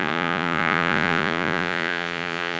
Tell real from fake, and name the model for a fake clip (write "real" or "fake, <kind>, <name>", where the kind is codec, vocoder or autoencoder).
fake, vocoder, Vocos